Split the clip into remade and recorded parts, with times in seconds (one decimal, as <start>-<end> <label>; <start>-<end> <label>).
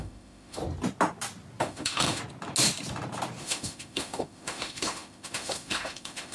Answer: 0.0-0.6 remade; 0.6-1.6 recorded; 1.6-2.2 remade; 2.2-3.4 recorded; 3.4-6.3 remade